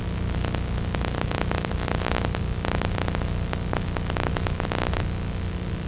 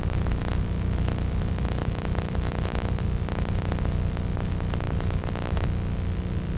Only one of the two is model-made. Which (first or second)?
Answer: second